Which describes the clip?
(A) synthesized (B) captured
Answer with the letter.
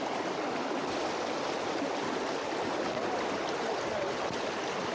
B